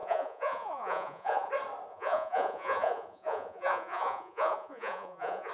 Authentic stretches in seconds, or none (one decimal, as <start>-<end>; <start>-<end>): 1.5-1.9